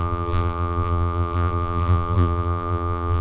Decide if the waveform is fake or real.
fake